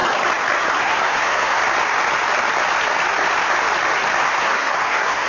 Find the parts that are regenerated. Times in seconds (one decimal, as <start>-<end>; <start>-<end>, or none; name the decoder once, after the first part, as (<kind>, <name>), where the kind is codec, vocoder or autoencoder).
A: 0.8-1.6 (codec, SNAC); 4.4-5.3